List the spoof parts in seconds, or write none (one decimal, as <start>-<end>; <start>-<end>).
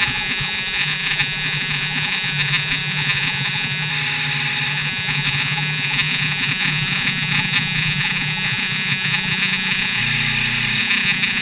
0.0-3.9; 4.7-10.0; 10.8-11.4